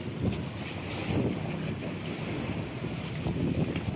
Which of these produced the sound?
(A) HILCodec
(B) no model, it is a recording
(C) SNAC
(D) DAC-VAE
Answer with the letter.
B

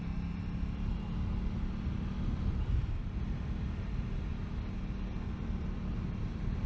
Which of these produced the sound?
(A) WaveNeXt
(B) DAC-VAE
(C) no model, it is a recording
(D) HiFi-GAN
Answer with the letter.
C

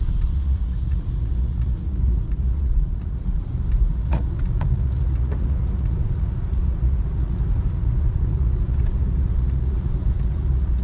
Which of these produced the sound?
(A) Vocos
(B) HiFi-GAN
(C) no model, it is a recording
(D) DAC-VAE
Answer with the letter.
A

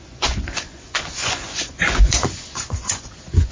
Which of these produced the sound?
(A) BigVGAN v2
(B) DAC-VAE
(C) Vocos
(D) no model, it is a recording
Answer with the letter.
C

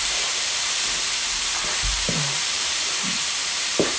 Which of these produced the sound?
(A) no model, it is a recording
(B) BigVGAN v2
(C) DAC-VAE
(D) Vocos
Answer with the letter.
B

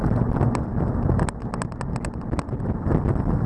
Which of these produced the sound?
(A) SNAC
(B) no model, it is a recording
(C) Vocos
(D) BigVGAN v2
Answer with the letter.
B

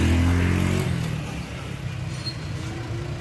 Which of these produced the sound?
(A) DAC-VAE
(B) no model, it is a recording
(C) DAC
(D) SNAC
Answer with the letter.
B